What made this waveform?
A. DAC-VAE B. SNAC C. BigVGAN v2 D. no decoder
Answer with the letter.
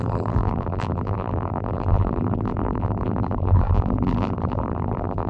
C